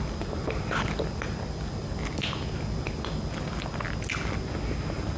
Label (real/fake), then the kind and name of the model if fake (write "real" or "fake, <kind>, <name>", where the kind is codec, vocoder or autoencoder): real